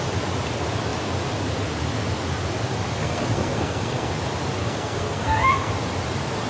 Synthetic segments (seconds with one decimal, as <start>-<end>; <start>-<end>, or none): 3.0-4.1; 4.6-5.7